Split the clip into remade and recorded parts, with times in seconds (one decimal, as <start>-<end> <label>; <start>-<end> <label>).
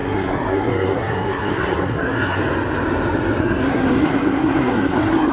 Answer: 0.0-2.4 remade; 2.4-3.4 recorded; 3.4-5.3 remade